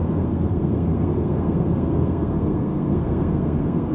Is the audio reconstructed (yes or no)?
yes